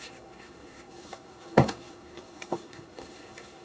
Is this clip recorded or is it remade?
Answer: remade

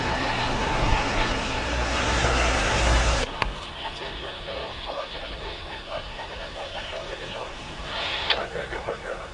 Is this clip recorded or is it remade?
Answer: remade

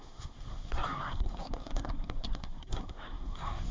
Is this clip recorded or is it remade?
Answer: remade